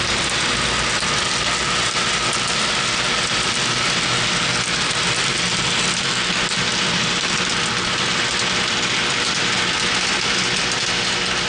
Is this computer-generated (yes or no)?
no